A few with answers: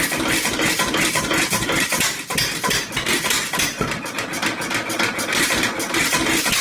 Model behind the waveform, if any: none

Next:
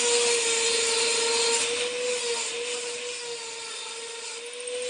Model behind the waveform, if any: none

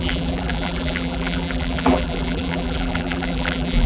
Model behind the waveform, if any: vocoder, BigVGAN v2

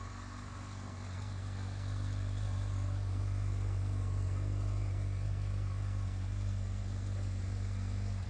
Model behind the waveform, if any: codec, SNAC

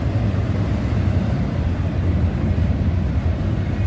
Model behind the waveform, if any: none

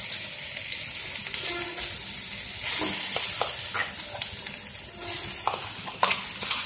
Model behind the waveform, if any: none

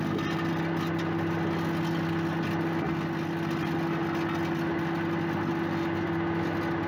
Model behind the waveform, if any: none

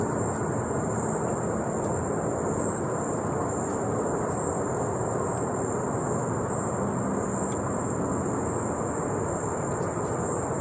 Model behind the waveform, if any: none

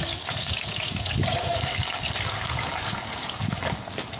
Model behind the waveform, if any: codec, DAC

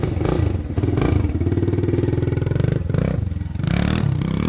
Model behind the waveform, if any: none